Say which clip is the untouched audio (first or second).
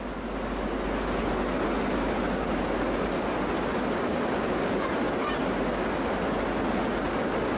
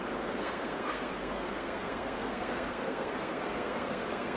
first